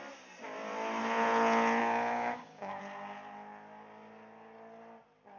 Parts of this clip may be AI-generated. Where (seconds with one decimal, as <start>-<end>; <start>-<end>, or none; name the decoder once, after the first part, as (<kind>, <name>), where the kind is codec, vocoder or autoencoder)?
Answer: 1.8-2.8 (codec, DAC)